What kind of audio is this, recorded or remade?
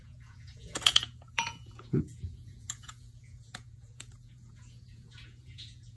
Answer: remade